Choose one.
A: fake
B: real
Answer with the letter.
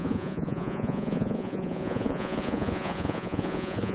A